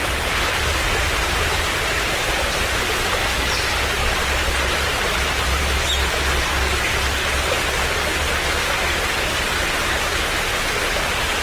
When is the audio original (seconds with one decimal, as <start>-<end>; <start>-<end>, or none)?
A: 2.3-3.2; 4.5-8.6; 10.7-11.4